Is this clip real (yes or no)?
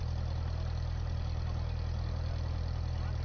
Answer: yes